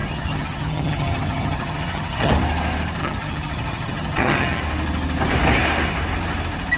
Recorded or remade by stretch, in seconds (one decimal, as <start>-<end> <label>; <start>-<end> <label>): 0.0-2.3 remade; 2.3-3.0 recorded; 3.0-4.6 remade; 4.6-6.8 recorded